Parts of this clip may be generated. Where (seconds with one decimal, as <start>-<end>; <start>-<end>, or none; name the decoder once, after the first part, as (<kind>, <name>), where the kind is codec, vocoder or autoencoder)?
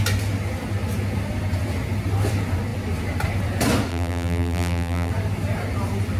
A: 3.9-5.1 (vocoder, BigVGAN v2)